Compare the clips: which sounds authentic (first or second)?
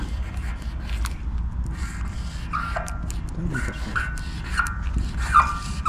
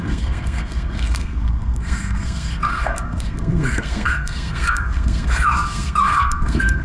first